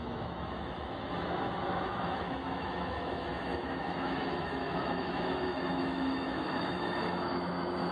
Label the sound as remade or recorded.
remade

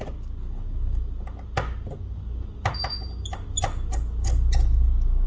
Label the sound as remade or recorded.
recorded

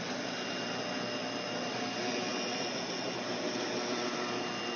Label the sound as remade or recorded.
recorded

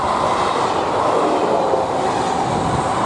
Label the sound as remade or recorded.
recorded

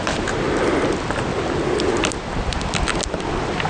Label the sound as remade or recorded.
recorded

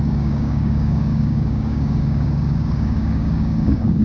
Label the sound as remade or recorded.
remade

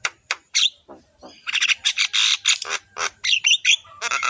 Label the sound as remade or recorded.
remade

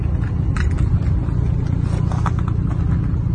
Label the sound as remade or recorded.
recorded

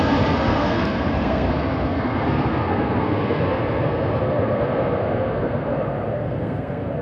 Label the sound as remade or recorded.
remade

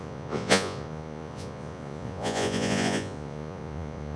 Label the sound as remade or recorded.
remade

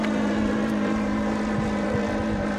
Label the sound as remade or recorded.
remade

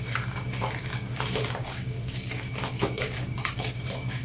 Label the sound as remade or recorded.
remade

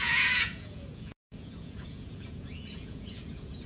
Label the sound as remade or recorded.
remade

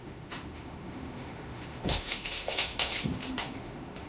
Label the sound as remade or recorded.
remade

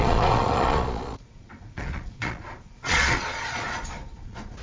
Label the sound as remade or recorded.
remade